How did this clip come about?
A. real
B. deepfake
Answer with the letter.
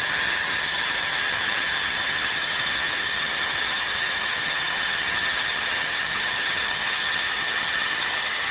B